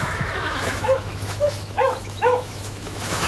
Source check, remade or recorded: remade